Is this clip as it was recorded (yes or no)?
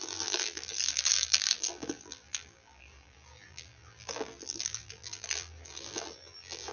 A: no